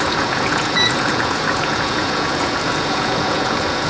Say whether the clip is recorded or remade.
remade